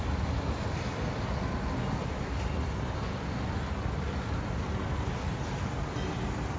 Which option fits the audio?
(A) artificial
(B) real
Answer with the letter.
B